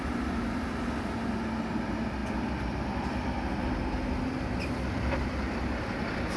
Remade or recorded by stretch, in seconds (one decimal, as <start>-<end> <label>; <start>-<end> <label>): 0.0-2.2 recorded; 2.2-5.6 remade; 5.6-6.4 recorded

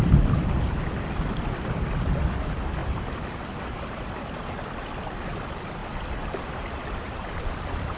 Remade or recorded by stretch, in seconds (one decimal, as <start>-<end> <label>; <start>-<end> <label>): 0.0-2.8 recorded; 2.8-4.5 remade; 4.5-8.0 recorded

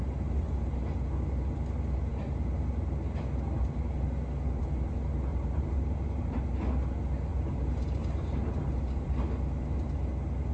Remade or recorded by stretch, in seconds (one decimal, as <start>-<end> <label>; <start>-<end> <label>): 0.0-5.3 recorded; 5.3-6.4 remade; 6.4-7.3 recorded; 7.3-8.6 remade; 8.6-10.5 recorded

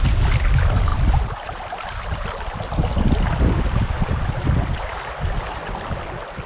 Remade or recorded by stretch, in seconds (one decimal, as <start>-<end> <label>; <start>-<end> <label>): 0.0-6.5 recorded

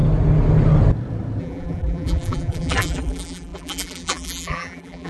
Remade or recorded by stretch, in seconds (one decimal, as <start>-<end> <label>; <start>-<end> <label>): 0.0-1.4 recorded; 1.4-5.1 remade

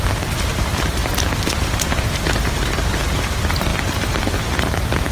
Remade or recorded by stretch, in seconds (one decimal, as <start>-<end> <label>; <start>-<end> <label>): 0.0-5.1 remade

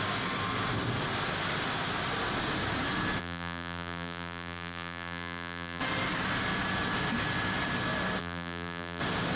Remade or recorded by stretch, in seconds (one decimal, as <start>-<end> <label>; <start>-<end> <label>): 0.0-3.2 recorded; 3.2-5.8 remade; 5.8-8.2 recorded; 8.2-9.0 remade; 9.0-9.4 recorded